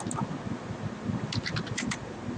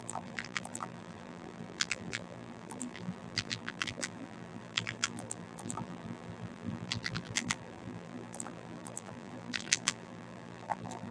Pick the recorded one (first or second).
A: first